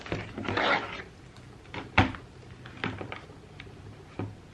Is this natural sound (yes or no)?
yes